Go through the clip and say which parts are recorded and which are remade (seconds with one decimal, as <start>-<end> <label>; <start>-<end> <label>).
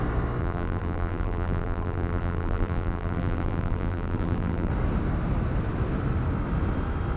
0.0-0.4 recorded; 0.4-4.7 remade; 4.7-7.2 recorded